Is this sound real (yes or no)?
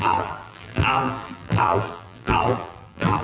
no